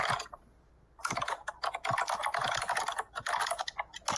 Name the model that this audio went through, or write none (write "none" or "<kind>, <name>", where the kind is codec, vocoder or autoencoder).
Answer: none